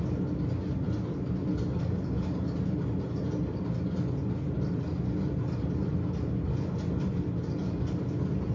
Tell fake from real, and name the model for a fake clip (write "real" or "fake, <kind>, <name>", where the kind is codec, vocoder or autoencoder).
real